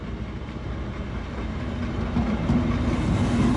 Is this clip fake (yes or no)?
no